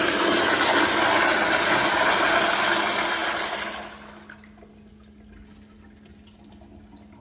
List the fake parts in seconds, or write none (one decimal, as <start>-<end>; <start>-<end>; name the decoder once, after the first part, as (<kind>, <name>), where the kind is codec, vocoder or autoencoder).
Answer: none